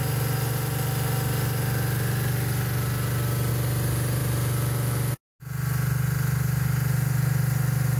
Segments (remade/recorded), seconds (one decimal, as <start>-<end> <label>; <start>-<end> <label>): 0.0-8.0 recorded

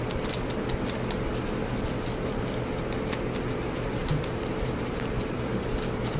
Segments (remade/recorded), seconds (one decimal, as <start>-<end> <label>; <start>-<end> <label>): 0.0-4.0 recorded; 4.0-5.7 remade; 5.7-6.2 recorded

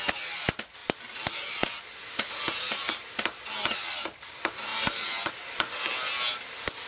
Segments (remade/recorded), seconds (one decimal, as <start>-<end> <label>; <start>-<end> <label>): 0.0-0.8 recorded; 0.8-3.1 remade; 3.1-4.7 recorded; 4.7-5.3 remade; 5.3-6.9 recorded

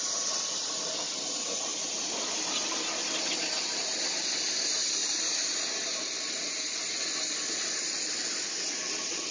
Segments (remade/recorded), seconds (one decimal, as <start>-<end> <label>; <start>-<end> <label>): 0.0-1.7 recorded; 1.7-2.3 remade; 2.3-5.0 recorded; 5.0-9.3 remade

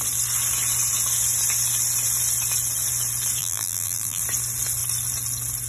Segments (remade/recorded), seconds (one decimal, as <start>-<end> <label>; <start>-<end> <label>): 0.0-3.4 recorded; 3.4-4.2 remade; 4.2-5.7 recorded

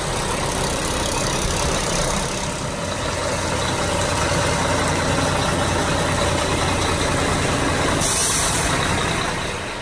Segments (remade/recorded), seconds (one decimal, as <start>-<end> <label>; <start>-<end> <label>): 0.0-8.2 recorded; 8.2-8.9 remade; 8.9-9.8 recorded

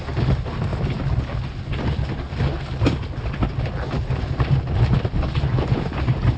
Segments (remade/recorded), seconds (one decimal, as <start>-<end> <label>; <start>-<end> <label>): 0.0-6.4 recorded

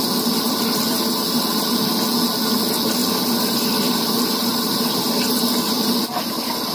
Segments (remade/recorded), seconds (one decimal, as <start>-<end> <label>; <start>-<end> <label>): 0.0-3.0 recorded; 3.0-5.3 remade; 5.3-6.7 recorded